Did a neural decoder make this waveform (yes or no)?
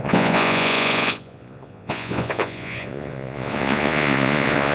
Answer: yes